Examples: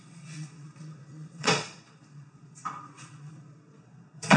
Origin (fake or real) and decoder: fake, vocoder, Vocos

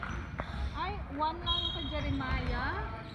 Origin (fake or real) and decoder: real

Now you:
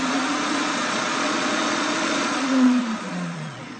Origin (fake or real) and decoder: fake, vocoder, Vocos